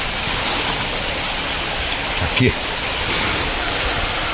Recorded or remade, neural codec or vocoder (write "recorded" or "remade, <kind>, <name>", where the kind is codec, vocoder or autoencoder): recorded